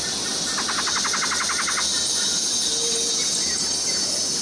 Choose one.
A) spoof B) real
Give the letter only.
B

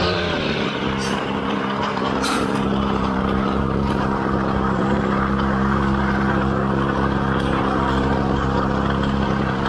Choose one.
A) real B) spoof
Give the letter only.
B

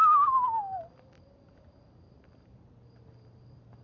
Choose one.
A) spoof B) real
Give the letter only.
B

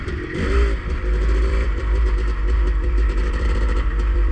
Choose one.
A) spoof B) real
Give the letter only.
A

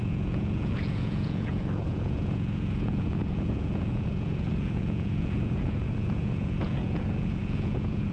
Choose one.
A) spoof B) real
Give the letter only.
A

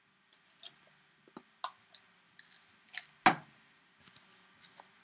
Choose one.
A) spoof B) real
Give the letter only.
B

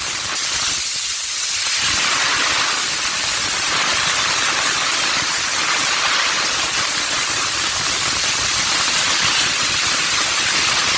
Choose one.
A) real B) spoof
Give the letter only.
A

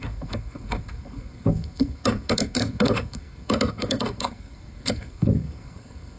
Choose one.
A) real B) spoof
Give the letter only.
B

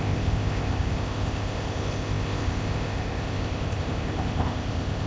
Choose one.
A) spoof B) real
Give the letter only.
A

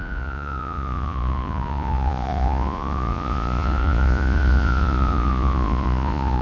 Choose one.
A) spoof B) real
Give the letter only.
A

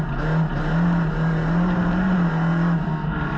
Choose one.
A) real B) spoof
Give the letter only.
A